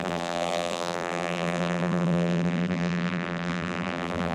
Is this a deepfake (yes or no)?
yes